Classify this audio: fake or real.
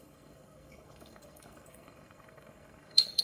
fake